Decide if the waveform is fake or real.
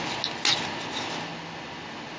real